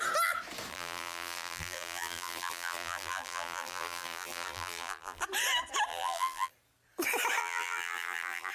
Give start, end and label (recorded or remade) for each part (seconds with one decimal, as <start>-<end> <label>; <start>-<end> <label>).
0.0-0.7 recorded; 0.7-5.2 remade; 5.2-5.9 recorded; 5.9-6.5 remade; 6.5-7.4 recorded; 7.4-8.5 remade